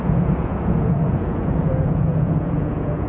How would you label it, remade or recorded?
remade